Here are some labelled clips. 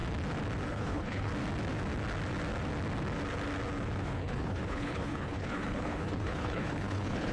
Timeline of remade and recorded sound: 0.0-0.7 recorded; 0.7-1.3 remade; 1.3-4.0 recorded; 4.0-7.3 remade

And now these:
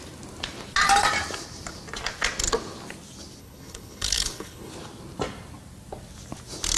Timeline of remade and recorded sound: 0.0-3.4 recorded; 3.4-4.7 remade; 4.7-6.8 recorded

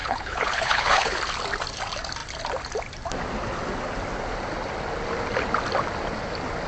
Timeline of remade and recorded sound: 0.0-1.2 remade; 1.2-6.7 recorded

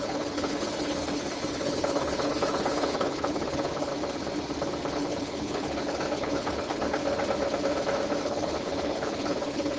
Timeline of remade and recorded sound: 0.0-3.9 remade; 3.9-4.9 recorded; 4.9-7.0 remade; 7.0-8.2 recorded; 8.2-9.8 remade

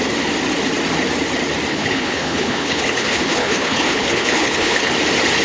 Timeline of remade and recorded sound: 0.0-1.7 recorded; 1.7-4.9 remade; 4.9-5.4 recorded